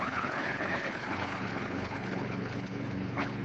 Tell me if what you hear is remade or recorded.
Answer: remade